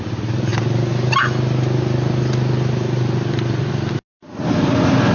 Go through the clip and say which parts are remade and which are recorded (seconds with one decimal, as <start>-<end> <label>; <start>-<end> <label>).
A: 0.0-5.1 recorded